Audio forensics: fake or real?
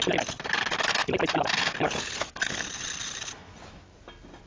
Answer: real